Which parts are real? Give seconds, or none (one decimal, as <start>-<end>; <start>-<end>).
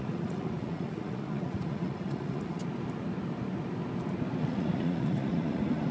2.6-4.4